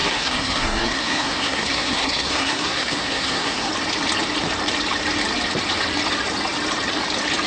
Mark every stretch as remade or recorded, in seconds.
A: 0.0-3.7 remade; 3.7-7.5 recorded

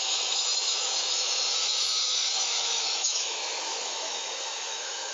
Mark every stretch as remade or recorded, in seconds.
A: 0.0-5.1 remade

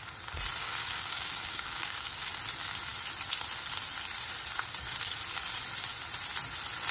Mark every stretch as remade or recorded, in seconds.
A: 0.0-0.6 recorded; 0.6-2.3 remade; 2.3-6.9 recorded

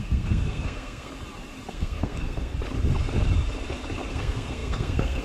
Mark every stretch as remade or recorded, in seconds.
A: 0.0-1.1 remade; 1.1-1.7 recorded; 1.7-2.5 remade; 2.5-4.1 recorded; 4.1-5.2 remade

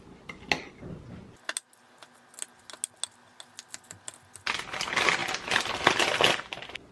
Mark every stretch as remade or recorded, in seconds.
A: 0.0-5.2 recorded; 5.2-5.7 remade; 5.7-6.9 recorded

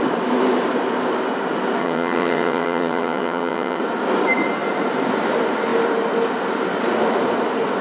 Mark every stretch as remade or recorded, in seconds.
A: 0.0-1.8 recorded; 1.8-3.8 remade; 3.8-7.8 recorded

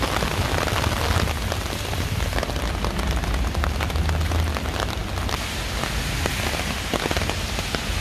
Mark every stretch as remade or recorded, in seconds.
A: 0.0-8.0 recorded

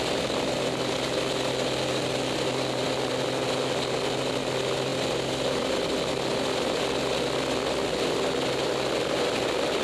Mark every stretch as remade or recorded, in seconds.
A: 0.0-9.8 recorded